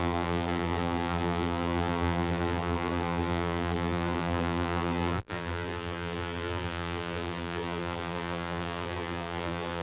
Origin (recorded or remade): remade